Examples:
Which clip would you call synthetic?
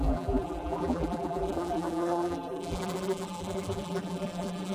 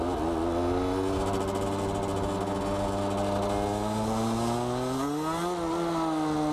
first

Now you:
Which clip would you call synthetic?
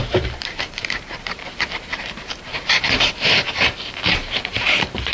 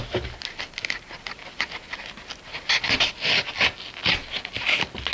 first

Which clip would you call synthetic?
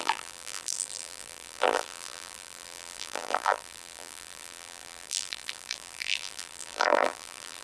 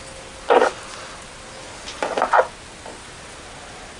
first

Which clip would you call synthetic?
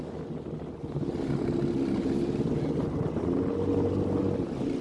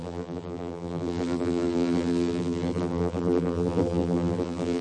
second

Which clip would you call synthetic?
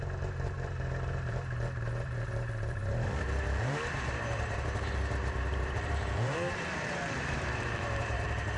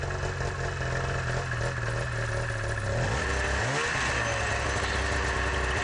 first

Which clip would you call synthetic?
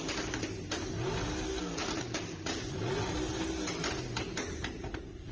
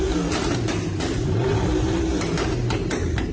second